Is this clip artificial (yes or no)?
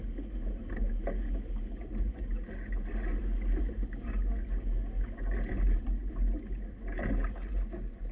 no